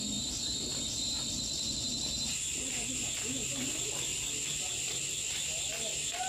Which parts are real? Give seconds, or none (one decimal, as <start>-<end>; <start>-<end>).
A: 0.0-0.7; 3.1-4.1; 4.7-6.3